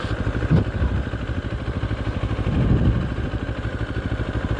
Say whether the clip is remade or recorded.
recorded